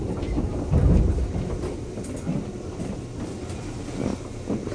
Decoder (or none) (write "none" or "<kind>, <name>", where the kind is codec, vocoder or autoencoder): none